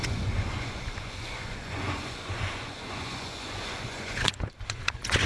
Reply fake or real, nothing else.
fake